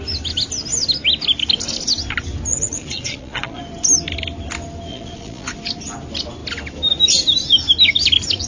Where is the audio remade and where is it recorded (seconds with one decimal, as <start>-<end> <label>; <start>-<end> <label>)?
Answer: 0.0-2.5 recorded; 2.5-3.6 remade; 3.6-4.9 recorded; 4.9-5.5 remade; 5.5-8.5 recorded